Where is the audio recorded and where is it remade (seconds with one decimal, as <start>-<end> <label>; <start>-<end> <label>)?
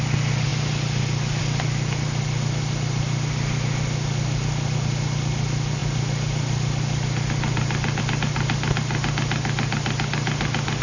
0.0-10.8 recorded